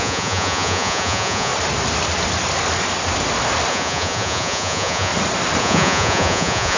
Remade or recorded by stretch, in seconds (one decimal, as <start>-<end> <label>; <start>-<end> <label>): 0.0-1.5 remade; 1.5-3.7 recorded; 3.7-5.1 remade; 5.1-5.6 recorded; 5.6-6.8 remade